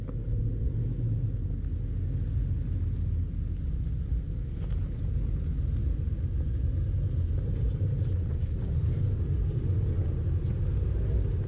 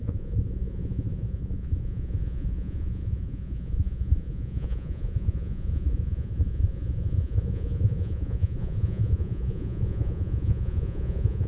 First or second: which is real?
first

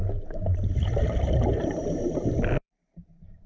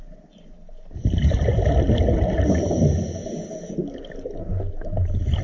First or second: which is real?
second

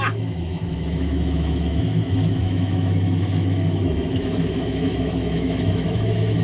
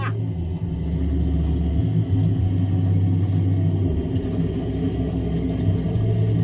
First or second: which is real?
second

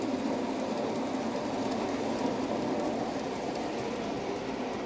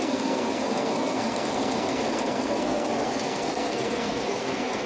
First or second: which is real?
first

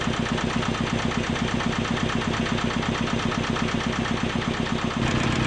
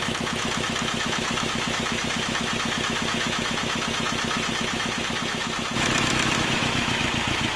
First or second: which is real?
first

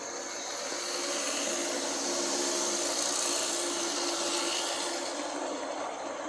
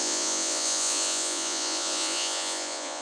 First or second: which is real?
first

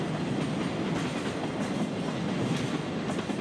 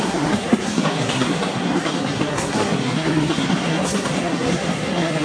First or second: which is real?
first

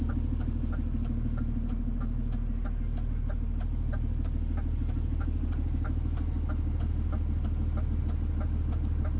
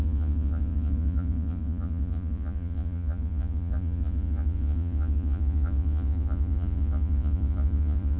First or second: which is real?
first